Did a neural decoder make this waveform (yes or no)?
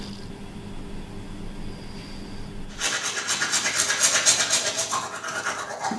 no